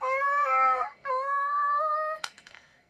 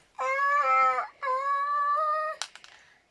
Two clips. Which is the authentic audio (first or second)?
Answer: second